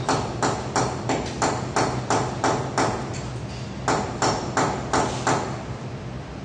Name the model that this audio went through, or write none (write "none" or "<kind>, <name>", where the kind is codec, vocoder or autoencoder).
none